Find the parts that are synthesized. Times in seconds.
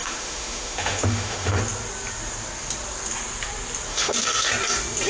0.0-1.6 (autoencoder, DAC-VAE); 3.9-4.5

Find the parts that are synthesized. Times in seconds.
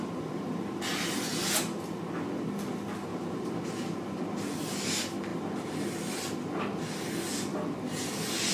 3.1-4.2 (vocoder, BigVGAN v2)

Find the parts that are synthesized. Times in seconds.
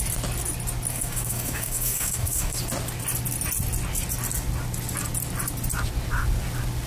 0.9-2.6 (codec, DAC)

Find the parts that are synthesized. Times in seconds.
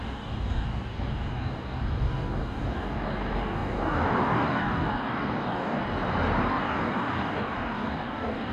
0.0-5.8 (codec, DAC); 6.5-8.5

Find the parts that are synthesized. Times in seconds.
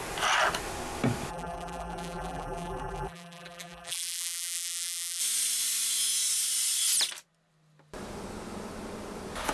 1.3-5.2 (vocoder, BigVGAN v2)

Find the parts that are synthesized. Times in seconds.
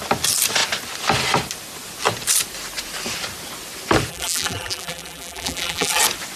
4.1-6.0 (vocoder, BigVGAN v2)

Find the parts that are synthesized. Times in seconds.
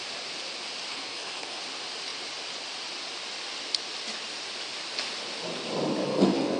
0.9-1.6 (codec, SNAC); 6.0-6.6